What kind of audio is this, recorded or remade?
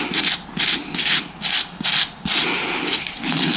recorded